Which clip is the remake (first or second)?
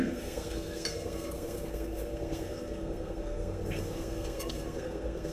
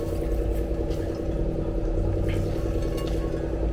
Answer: first